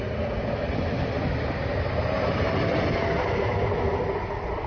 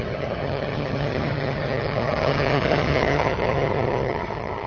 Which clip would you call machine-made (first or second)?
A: second